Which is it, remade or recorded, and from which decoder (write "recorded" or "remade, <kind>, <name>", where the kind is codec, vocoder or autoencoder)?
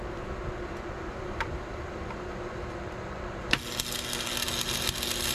recorded